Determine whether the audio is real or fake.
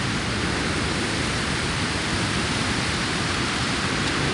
fake